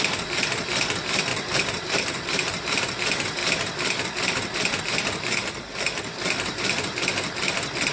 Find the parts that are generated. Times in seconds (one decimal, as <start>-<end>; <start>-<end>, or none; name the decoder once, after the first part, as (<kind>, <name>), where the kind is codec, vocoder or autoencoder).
1.3-2.8 (vocoder, BigVGAN v2)